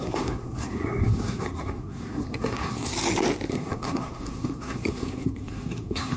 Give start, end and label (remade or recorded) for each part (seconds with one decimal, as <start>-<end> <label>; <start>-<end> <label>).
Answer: 0.0-2.9 remade; 2.9-3.5 recorded; 3.5-6.2 remade